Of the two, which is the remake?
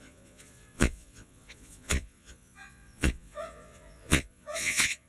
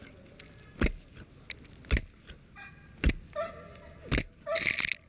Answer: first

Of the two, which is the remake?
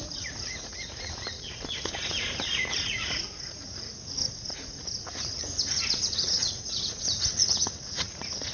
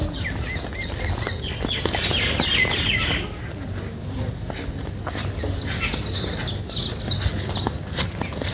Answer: first